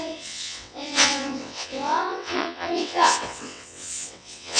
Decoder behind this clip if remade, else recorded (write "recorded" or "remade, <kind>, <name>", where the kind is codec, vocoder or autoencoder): remade, vocoder, WaveNeXt